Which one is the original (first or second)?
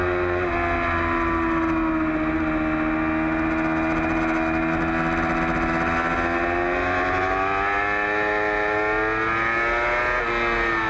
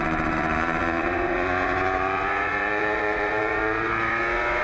first